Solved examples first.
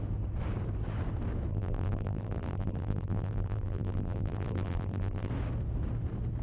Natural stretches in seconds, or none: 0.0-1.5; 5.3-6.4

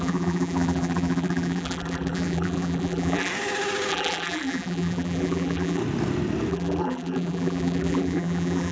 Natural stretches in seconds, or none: 3.3-3.9; 5.8-6.5

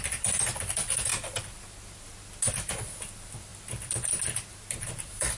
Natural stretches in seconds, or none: 1.1-2.5; 3.5-5.0